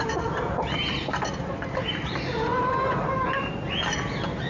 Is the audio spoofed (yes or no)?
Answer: no